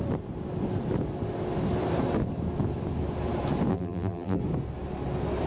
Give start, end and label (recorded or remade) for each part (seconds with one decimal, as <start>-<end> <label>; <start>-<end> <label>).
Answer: 0.0-3.7 recorded; 3.7-4.4 remade; 4.4-5.5 recorded